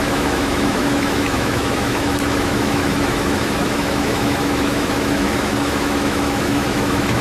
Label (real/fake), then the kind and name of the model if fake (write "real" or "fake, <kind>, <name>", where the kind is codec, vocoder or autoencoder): fake, autoencoder, DAC-VAE